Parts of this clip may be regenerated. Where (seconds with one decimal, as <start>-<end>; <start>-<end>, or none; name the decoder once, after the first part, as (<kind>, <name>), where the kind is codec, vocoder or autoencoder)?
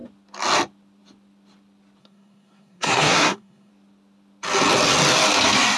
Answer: 2.0-3.7 (codec, SNAC)